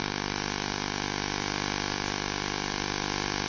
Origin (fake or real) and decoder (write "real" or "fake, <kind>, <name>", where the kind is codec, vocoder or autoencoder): real